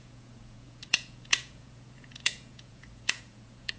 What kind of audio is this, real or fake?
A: fake